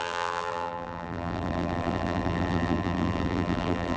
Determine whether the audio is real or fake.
fake